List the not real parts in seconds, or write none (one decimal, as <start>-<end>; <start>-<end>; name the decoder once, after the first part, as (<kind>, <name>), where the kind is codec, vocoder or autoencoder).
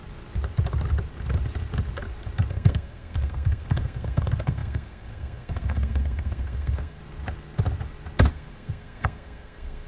2.5-7.0 (codec, SNAC); 8.3-9.9